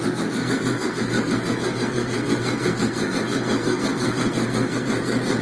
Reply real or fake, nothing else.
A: fake